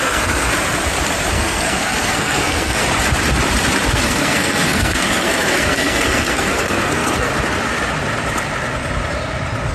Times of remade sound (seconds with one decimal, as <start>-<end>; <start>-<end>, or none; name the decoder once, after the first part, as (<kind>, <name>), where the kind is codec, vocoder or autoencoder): 0.0-0.5 (codec, SNAC); 1.3-2.8; 3.9-7.3